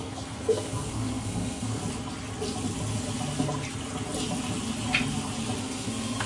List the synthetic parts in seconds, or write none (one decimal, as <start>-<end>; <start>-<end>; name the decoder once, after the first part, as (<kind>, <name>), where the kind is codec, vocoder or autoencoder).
0.0-1.8 (codec, SNAC); 5.6-6.3